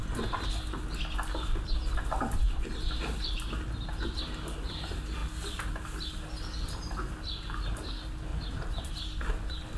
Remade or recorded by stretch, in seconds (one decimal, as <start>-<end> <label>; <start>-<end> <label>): 0.0-8.3 recorded; 8.3-8.9 remade; 8.9-9.8 recorded